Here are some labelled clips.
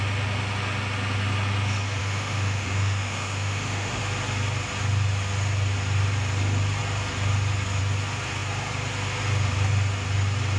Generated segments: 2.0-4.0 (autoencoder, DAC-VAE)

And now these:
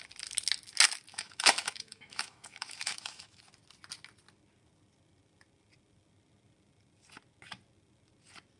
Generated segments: 1.1-3.4 (autoencoder, DAC-VAE)

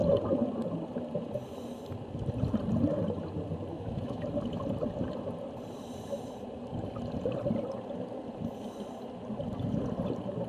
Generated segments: 3.7-4.2 (autoencoder, DAC-VAE)

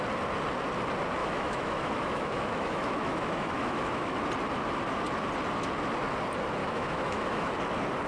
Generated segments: 1.2-4.2 (autoencoder, DAC-VAE); 6.6-7.5

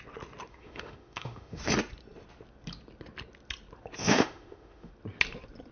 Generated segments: 0.5-1.6 (autoencoder, DAC-VAE); 4.0-4.9

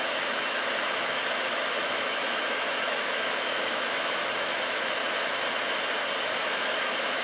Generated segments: 0.0-5.0 (autoencoder, DAC-VAE); 6.2-7.2

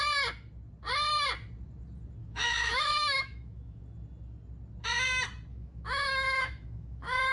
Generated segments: 2.2-3.8 (autoencoder, DAC-VAE); 5.5-7.3

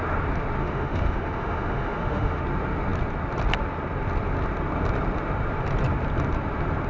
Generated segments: 0.6-2.4 (autoencoder, DAC-VAE)